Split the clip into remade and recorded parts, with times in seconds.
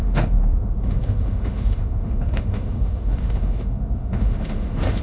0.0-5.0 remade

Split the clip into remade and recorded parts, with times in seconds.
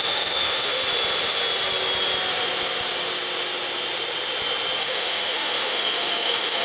0.0-0.8 remade; 0.8-4.8 recorded; 4.8-6.6 remade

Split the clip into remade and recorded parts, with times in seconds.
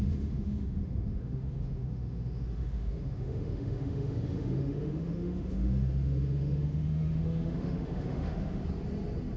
0.0-8.6 remade; 8.6-9.4 recorded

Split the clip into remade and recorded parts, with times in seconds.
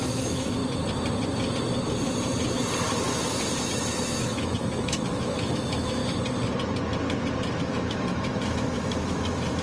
0.0-0.6 remade; 0.6-3.6 recorded; 3.6-6.0 remade; 6.0-7.6 recorded; 7.6-9.6 remade